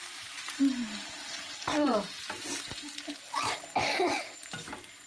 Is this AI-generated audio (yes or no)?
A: no